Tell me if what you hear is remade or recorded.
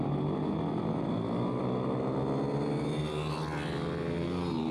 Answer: recorded